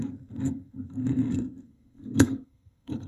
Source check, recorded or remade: remade